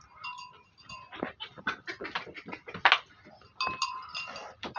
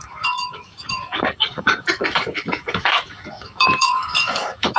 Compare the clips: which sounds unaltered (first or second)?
first